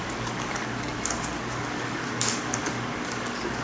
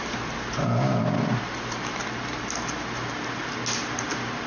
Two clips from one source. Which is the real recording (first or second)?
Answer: second